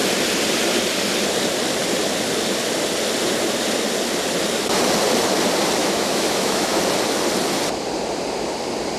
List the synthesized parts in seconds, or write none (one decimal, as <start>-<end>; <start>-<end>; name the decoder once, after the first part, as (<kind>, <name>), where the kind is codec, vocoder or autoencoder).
5.8-6.8 (autoencoder, DAC-VAE)